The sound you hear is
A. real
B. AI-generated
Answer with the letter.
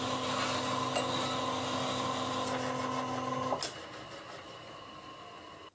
A